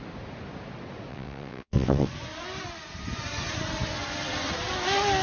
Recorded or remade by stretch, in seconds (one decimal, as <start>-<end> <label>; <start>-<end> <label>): 0.0-1.1 recorded; 1.1-2.1 remade; 2.1-5.2 recorded